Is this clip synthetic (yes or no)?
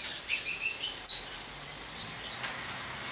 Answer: no